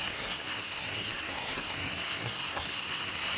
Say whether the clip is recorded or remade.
remade